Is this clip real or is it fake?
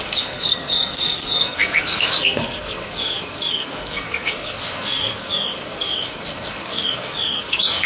fake